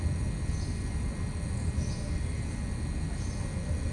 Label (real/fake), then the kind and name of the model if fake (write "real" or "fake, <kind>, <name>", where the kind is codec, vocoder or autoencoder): real